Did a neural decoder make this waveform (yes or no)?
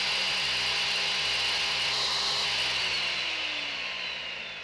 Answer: no